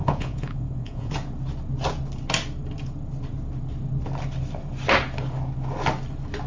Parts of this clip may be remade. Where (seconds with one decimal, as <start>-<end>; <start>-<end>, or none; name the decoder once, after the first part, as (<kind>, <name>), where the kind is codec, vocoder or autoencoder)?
0.0-1.1 (vocoder, Vocos)